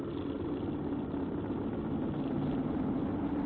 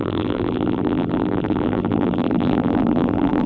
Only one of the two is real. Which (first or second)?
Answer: first